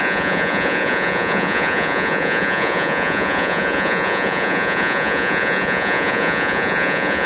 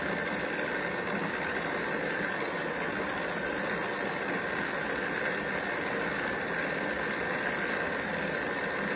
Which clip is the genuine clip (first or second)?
second